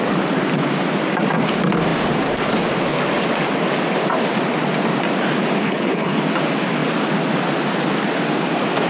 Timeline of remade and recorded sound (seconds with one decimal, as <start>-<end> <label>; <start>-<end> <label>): 0.0-5.6 recorded; 5.6-6.2 remade; 6.2-8.9 recorded